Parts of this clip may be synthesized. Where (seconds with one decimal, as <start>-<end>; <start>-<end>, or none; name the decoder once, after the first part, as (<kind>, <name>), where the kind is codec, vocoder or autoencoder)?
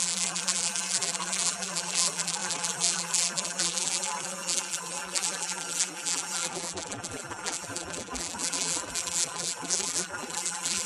0.0-10.9 (vocoder, BigVGAN v2)